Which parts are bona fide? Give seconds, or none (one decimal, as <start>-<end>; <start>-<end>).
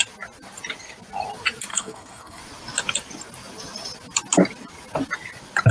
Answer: 0.0-1.7; 2.4-5.7